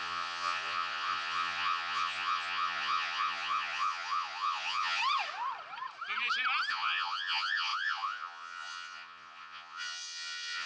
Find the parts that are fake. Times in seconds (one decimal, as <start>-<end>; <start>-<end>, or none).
0.0-5.0; 6.7-10.7